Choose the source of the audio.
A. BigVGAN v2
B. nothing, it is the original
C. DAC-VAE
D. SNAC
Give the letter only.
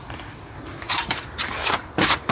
A